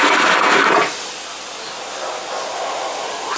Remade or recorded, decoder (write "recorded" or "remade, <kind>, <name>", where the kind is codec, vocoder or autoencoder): recorded